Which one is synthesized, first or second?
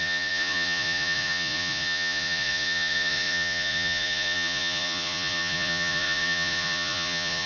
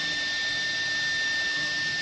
first